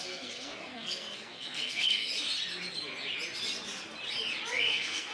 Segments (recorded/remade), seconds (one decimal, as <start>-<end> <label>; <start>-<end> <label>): 0.0-2.1 remade; 2.1-4.5 recorded; 4.5-5.1 remade